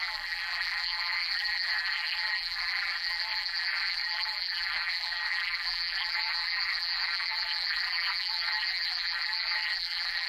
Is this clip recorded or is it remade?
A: remade